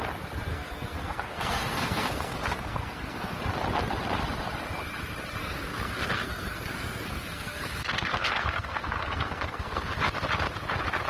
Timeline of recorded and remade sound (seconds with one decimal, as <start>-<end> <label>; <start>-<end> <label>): 0.0-0.5 recorded; 0.5-3.4 remade; 3.4-5.4 recorded; 5.4-9.9 remade; 9.9-11.1 recorded